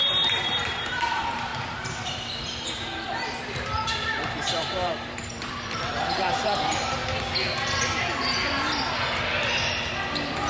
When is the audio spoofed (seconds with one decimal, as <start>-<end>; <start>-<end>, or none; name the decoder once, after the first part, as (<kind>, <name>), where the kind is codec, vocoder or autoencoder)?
0.0-1.5 (vocoder, BigVGAN v2); 2.0-7.0